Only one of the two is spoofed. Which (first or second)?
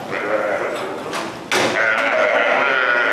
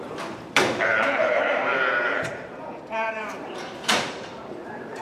second